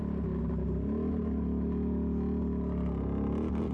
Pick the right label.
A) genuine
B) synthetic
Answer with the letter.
A